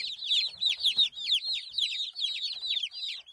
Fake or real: real